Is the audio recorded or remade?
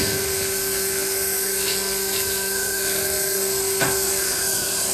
remade